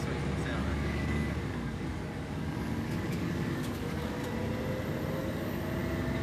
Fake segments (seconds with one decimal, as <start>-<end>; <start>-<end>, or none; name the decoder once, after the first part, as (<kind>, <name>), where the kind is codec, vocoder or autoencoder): 0.6-4.3 (codec, DAC); 5.2-5.8

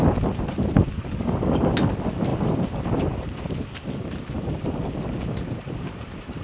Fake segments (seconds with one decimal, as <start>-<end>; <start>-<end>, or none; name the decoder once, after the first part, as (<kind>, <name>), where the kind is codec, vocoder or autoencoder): 0.9-1.7 (codec, DAC)

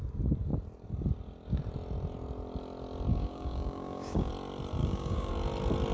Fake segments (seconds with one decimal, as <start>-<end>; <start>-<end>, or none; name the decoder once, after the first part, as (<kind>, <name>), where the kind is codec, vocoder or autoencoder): 3.1-4.3 (codec, DAC); 4.8-5.3

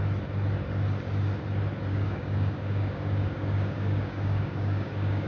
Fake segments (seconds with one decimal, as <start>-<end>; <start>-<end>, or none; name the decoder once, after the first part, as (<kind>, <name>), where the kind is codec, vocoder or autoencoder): 1.9-5.3 (codec, DAC)

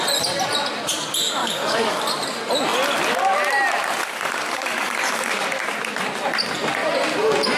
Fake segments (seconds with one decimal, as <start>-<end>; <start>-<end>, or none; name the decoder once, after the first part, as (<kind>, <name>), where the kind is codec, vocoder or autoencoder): 1.4-2.0 (codec, DAC); 4.0-5.3

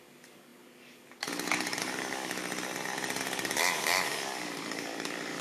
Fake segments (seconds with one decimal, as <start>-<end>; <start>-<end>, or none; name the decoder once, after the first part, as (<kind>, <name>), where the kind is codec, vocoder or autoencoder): 0.0-2.4 (codec, DAC); 3.2-5.4